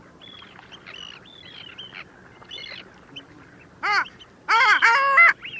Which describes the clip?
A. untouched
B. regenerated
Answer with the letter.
A